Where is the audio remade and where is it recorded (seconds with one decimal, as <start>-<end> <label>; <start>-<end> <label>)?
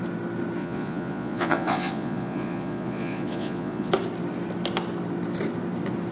0.0-0.6 recorded; 0.6-3.9 remade; 3.9-6.1 recorded